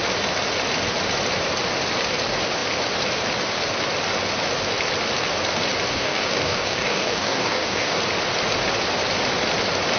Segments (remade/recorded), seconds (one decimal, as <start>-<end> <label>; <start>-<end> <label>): 0.0-5.9 recorded; 5.9-8.0 remade; 8.0-10.0 recorded